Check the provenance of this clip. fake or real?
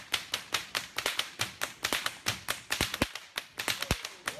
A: real